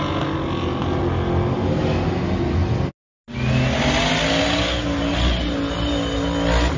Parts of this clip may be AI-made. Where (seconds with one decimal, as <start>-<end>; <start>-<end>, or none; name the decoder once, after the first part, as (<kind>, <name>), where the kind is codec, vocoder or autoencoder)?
none